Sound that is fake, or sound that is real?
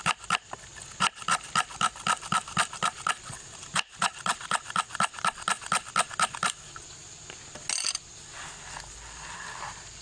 real